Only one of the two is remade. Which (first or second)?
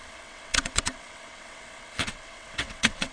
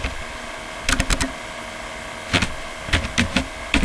first